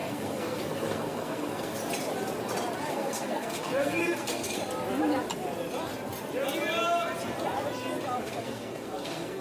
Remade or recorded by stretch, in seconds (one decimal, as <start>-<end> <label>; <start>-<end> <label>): 0.0-1.8 remade; 1.8-2.9 recorded; 2.9-4.6 remade; 4.6-8.2 recorded; 8.2-9.4 remade